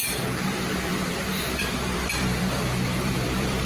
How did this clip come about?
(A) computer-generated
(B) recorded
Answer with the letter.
A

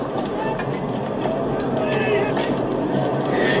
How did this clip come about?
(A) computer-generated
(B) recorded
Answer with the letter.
B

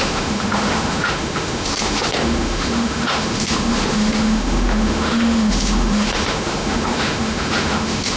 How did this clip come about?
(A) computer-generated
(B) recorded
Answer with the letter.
A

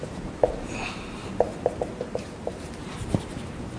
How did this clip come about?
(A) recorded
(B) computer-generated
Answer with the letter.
B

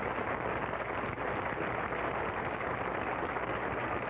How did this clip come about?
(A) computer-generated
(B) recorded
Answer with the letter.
B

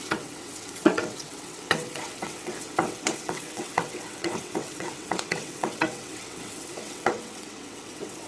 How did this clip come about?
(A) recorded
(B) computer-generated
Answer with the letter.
B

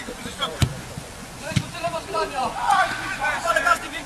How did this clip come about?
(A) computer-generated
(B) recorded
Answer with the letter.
A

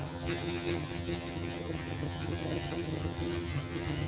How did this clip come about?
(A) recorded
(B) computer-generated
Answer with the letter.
B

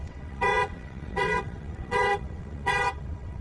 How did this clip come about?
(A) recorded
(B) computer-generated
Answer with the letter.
B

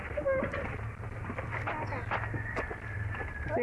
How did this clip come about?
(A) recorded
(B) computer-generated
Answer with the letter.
A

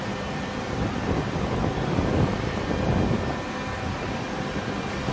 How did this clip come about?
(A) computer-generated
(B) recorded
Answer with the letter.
B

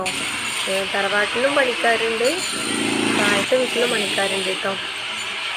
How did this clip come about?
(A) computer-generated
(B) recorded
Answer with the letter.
B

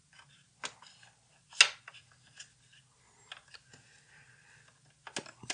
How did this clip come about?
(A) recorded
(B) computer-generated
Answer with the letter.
A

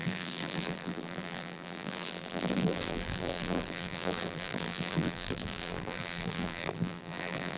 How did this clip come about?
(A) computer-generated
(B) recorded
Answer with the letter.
A